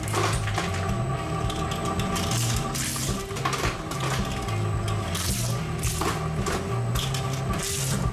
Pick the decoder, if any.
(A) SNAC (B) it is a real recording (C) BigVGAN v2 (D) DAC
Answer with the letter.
B